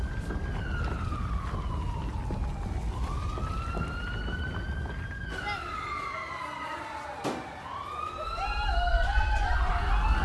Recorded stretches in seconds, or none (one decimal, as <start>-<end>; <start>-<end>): 0.0-8.9; 9.7-10.2

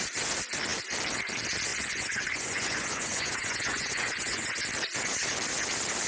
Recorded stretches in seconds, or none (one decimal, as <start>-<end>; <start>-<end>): 0.0-1.7; 4.6-6.1

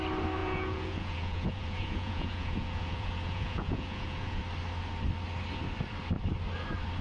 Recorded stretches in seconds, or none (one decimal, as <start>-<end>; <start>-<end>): 0.0-0.4; 4.4-7.0